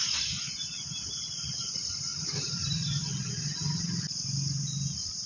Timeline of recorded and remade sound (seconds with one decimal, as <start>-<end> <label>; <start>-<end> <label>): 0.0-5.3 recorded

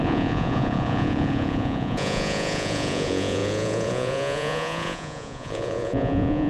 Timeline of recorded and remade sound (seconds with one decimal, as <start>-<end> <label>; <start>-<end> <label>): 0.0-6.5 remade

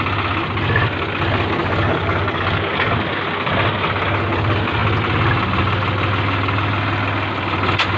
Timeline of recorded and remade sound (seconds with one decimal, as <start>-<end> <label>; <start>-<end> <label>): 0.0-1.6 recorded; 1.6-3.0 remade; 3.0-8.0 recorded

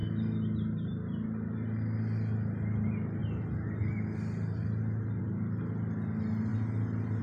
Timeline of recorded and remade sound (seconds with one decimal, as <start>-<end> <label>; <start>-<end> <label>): 0.0-7.2 recorded